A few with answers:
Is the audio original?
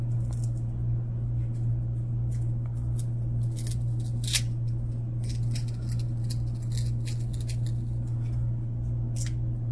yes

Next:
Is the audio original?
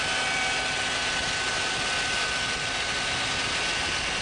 yes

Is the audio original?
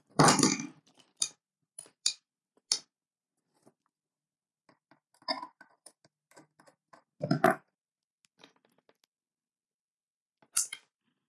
yes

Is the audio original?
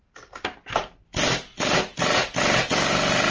yes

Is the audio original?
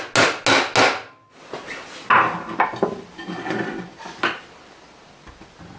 yes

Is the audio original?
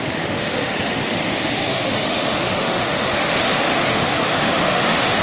no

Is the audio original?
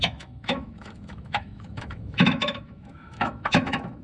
no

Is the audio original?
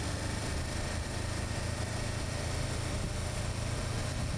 yes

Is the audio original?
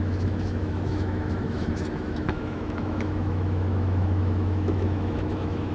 no